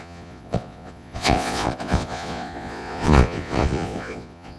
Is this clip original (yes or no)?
no